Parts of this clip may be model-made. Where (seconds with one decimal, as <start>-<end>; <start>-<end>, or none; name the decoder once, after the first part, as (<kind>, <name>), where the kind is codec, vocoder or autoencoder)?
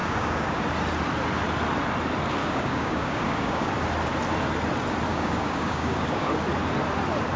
0.0-0.6 (codec, DAC); 2.4-3.7; 5.1-6.3